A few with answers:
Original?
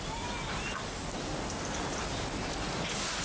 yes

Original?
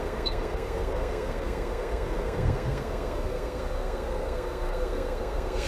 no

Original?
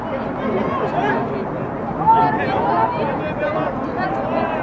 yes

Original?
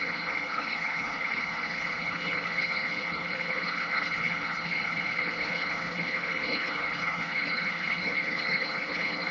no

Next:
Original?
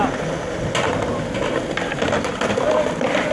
yes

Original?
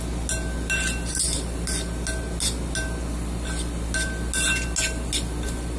yes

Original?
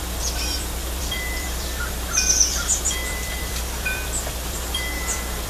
no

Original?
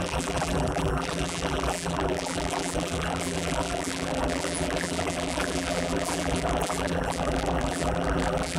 no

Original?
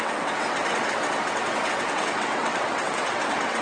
no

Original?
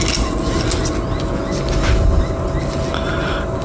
yes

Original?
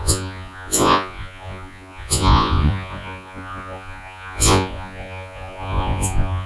no